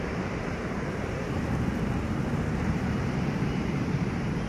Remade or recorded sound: remade